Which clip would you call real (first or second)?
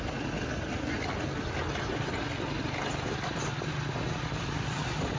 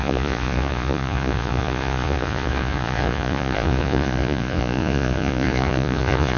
first